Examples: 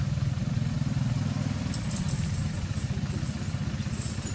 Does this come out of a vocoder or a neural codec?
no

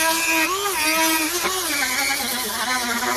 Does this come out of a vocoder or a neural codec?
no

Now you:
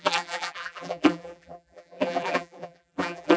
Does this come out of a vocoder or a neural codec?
yes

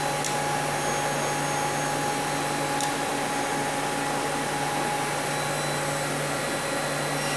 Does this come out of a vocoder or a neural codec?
no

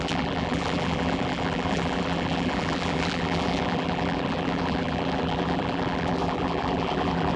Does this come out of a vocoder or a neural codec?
yes